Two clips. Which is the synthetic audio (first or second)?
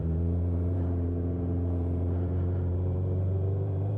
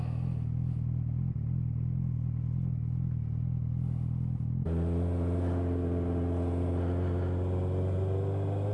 first